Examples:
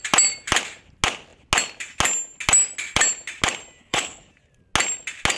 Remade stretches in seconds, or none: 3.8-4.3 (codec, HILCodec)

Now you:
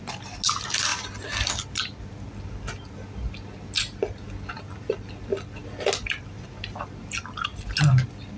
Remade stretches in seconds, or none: none

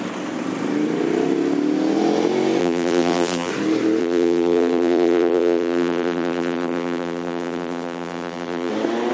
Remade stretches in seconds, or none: 2.6-3.5 (vocoder, BigVGAN v2); 4.0-8.7

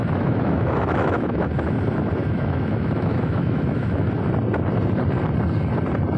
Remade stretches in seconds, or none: 0.0-1.5 (autoencoder, DAC-VAE); 2.2-4.1